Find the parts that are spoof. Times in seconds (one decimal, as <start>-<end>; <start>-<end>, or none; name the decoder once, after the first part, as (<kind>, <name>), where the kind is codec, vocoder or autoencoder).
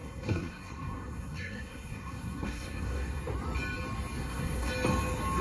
0.0-3.2 (codec, SNAC); 4.2-4.7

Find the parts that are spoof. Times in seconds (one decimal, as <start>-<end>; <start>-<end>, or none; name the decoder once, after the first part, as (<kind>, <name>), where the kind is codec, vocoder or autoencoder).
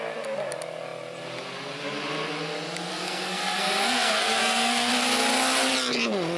2.9-4.9 (codec, SNAC)